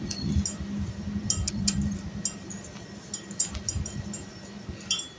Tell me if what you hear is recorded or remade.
recorded